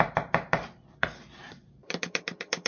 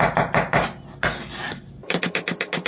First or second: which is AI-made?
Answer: first